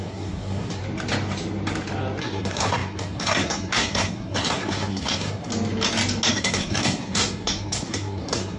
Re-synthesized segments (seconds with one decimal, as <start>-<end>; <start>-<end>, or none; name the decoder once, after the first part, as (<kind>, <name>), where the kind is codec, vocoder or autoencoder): 0.0-0.8 (codec, SNAC); 2.2-5.5; 6.3-8.6